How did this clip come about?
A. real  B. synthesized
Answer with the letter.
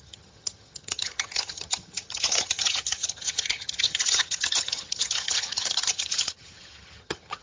B